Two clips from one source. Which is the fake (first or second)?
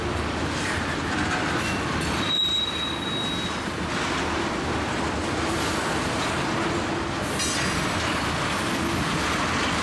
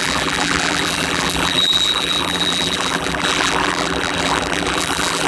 second